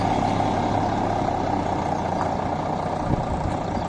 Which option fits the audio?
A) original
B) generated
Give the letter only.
A